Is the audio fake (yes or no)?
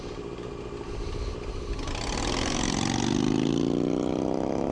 no